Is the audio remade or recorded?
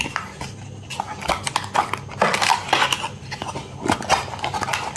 recorded